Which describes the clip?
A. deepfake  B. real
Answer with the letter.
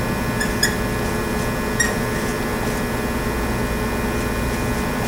B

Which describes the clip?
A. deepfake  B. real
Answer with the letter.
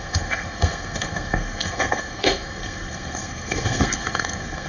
A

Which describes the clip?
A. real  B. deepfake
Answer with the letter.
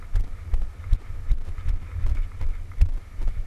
A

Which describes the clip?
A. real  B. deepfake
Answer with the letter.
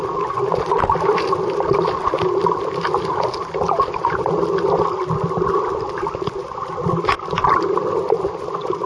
A